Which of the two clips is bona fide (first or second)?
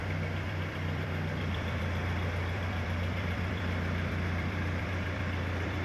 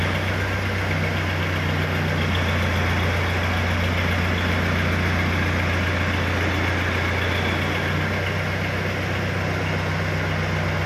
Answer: second